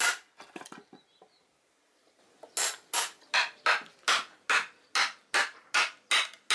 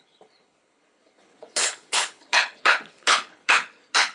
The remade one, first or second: second